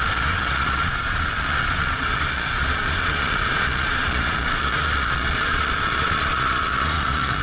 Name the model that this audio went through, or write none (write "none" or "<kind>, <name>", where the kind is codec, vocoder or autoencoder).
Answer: vocoder, Vocos